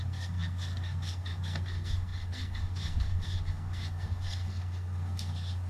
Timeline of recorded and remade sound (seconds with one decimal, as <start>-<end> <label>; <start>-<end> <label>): 0.0-5.7 remade